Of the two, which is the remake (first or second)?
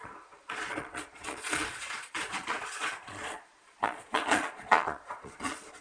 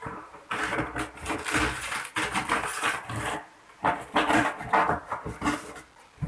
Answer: first